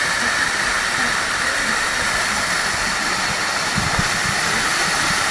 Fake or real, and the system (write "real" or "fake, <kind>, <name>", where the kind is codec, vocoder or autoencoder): real